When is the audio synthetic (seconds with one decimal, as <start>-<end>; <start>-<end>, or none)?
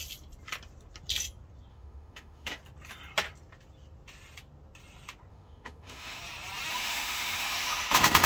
1.7-2.6; 5.3-6.2; 6.7-8.3